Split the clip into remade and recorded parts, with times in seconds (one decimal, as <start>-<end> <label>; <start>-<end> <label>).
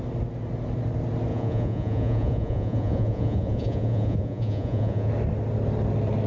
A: 0.0-1.3 recorded; 1.3-5.1 remade; 5.1-6.3 recorded